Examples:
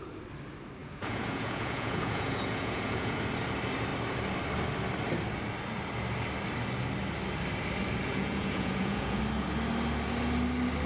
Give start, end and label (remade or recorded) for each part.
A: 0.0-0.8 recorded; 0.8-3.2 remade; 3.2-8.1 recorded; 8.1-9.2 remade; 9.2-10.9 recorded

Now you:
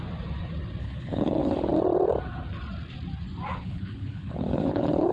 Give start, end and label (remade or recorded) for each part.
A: 0.0-0.8 recorded; 0.8-1.7 remade; 1.7-3.5 recorded; 3.5-5.1 remade

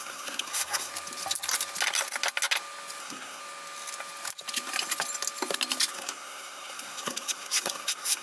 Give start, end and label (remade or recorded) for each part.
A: 0.0-0.9 remade; 0.9-3.0 recorded; 3.0-3.4 remade; 3.4-5.9 recorded; 5.9-8.2 remade